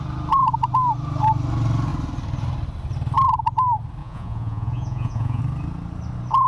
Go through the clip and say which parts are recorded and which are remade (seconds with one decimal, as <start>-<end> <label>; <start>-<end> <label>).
0.0-4.0 recorded; 4.0-5.4 remade; 5.4-6.5 recorded